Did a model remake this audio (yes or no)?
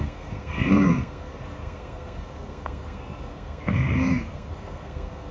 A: yes